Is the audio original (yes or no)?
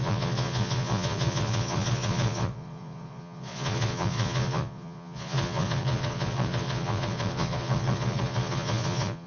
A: no